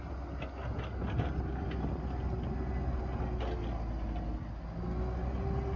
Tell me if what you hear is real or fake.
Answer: real